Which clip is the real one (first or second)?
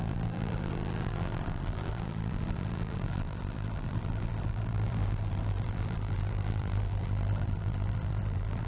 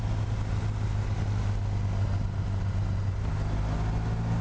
second